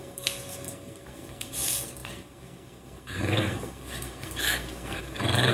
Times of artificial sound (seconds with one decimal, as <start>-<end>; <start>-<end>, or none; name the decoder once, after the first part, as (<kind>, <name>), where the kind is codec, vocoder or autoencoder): 0.0-5.5 (codec, SNAC)